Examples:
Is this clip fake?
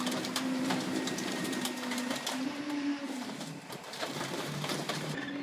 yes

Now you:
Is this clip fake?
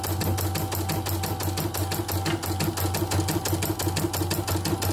no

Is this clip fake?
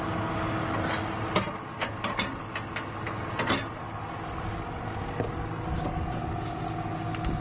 no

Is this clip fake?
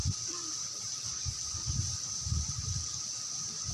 no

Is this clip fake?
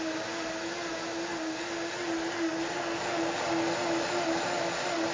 no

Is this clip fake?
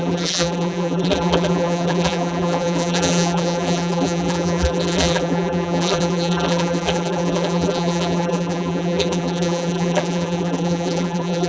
yes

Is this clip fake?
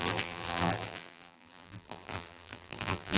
yes